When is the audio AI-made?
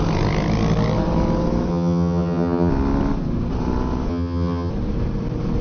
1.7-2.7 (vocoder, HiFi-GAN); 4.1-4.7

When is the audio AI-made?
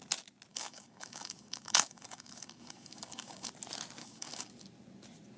0.5-3.5 (codec, DAC); 4.0-4.5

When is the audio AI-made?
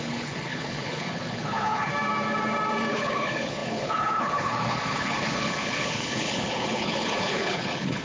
0.0-1.9 (codec, HILCodec); 2.9-8.0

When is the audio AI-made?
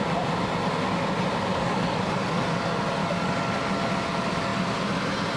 1.5-2.4 (codec, DAC); 3.0-3.6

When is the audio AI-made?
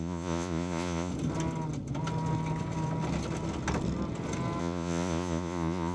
0.0-1.1 (vocoder, Vocos); 4.6-5.9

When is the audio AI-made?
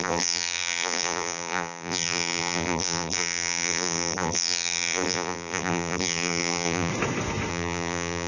0.0-6.9 (vocoder, BigVGAN v2); 7.5-8.3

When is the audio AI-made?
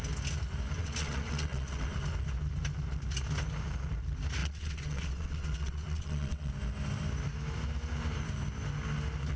0.8-1.8 (vocoder, WaveNeXt); 4.4-6.5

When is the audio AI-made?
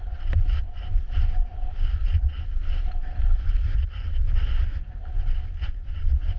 none